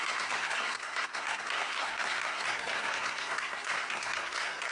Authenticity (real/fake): fake